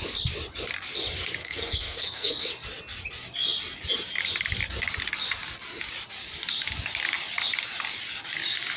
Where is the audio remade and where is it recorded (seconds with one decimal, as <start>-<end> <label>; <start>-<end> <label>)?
0.0-1.4 recorded; 1.4-2.5 remade; 2.5-8.8 recorded